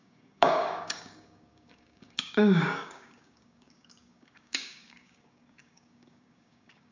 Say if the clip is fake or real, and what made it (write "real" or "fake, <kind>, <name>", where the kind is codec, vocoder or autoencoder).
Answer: fake, codec, DAC